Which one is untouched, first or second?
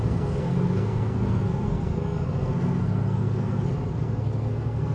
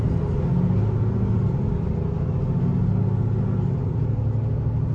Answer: second